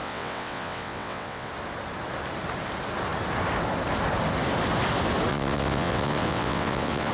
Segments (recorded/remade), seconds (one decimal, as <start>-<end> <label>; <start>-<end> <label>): 0.0-1.5 remade; 1.5-5.3 recorded; 5.3-7.1 remade